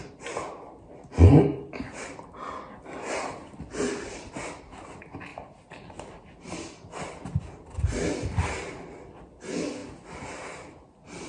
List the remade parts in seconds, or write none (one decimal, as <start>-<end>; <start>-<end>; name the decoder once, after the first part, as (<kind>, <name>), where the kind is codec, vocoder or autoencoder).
none